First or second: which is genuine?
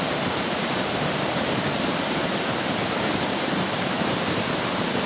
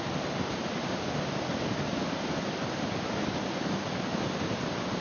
second